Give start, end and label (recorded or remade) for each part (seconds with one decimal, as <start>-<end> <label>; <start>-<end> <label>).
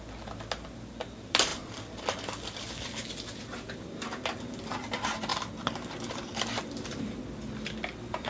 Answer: 0.0-8.3 recorded